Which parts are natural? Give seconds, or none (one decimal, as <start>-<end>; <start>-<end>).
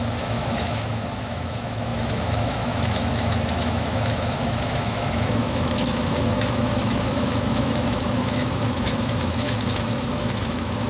none